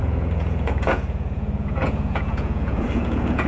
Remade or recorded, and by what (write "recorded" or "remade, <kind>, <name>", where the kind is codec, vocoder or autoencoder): remade, vocoder, Vocos